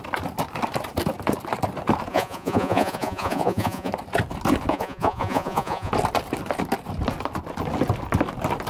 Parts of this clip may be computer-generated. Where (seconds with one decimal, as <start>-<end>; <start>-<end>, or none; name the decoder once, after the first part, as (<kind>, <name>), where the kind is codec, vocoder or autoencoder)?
2.1-3.9 (vocoder, Vocos); 4.7-5.9